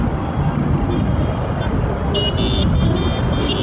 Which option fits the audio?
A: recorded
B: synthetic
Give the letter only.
A